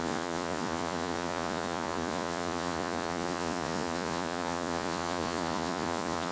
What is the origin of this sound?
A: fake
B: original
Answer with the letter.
A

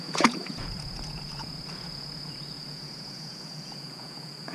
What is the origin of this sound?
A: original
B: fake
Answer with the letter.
B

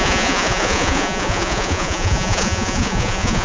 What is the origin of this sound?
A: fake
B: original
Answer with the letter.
A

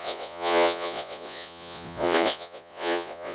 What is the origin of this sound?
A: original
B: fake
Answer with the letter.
B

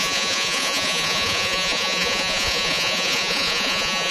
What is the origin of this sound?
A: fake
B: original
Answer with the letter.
A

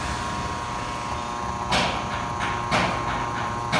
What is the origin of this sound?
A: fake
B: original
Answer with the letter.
B